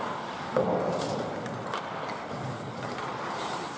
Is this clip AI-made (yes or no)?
no